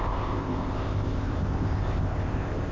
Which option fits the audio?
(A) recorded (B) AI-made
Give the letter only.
B